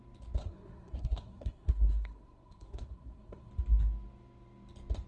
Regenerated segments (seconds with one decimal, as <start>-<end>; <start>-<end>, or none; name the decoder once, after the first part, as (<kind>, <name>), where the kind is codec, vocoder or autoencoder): 0.4-3.5 (codec, SNAC)